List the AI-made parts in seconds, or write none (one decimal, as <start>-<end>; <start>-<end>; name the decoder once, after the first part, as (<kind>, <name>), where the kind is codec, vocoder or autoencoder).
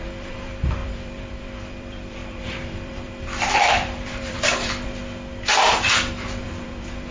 0.0-5.0 (vocoder, BigVGAN v2); 5.7-7.1